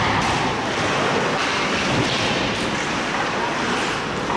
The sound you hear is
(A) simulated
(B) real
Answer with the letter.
B